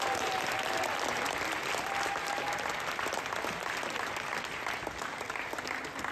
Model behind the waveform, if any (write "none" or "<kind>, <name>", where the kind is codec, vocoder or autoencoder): none